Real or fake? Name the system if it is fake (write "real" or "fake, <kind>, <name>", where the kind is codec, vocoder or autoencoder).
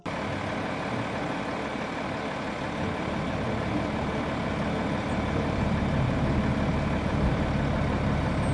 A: real